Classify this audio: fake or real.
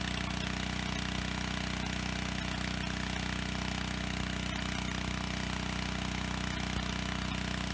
real